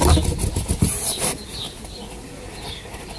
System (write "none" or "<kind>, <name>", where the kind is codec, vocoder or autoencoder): none